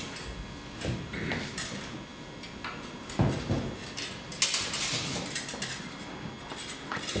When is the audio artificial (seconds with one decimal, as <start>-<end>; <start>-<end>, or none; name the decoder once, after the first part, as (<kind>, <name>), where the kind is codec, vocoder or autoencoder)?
none